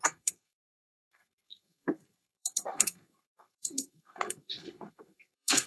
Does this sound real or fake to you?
fake